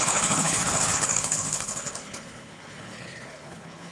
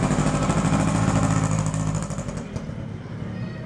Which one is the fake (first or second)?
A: first